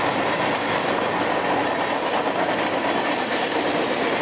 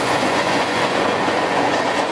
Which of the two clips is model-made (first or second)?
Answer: second